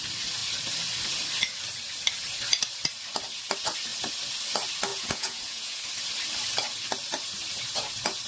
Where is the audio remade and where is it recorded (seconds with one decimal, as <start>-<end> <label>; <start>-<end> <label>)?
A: 0.0-4.9 recorded; 4.9-5.8 remade; 5.8-8.3 recorded